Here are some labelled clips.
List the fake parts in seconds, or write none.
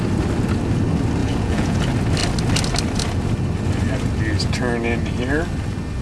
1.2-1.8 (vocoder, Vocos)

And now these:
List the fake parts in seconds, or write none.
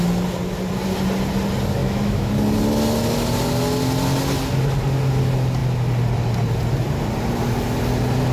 1.8-2.3 (autoencoder, DAC-VAE)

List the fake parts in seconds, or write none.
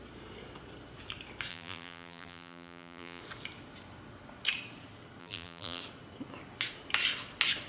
1.5-3.2 (vocoder, BigVGAN v2); 5.2-5.8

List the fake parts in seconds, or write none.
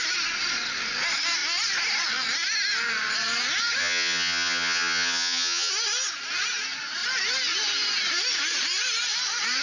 3.8-5.7 (vocoder, HiFi-GAN)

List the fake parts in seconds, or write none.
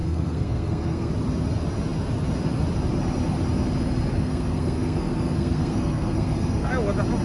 0.0-1.1 (codec, SNAC); 4.1-6.7